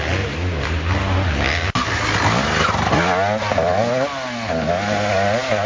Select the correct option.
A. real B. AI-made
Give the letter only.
A